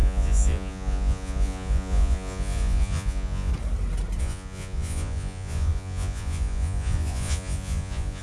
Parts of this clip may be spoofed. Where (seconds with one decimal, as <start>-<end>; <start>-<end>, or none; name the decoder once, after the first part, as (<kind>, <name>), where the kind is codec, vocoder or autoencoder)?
0.0-3.5 (vocoder, Vocos); 4.2-8.2